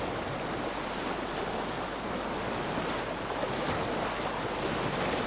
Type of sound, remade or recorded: recorded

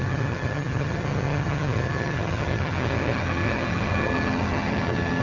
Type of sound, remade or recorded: remade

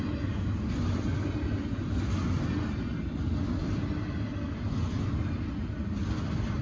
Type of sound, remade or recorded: recorded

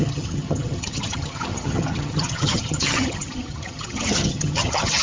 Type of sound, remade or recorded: remade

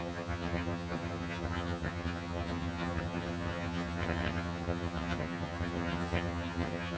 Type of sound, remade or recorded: remade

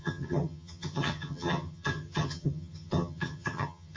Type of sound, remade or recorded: remade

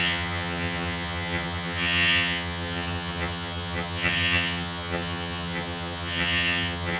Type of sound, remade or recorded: remade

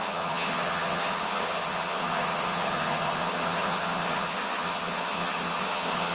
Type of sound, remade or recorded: remade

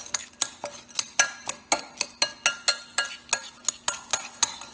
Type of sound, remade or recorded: recorded